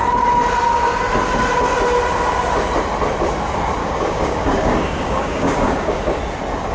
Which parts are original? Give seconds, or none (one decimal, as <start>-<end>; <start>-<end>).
0.0-3.8; 6.2-6.7